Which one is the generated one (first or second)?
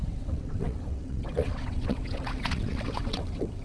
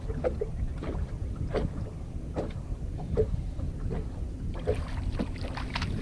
first